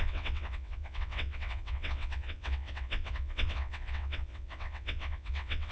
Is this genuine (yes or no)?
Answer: no